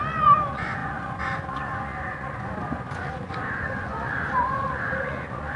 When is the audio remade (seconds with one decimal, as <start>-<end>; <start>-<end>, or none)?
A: 0.0-5.6